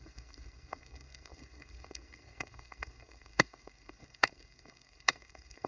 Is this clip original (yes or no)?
no